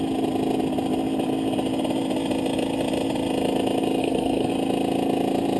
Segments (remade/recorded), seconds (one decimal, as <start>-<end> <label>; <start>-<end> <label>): 0.0-4.0 recorded; 4.0-4.5 remade; 4.5-5.6 recorded